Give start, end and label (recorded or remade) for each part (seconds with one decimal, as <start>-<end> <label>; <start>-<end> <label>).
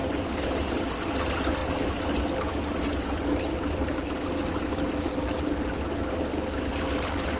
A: 0.0-7.4 recorded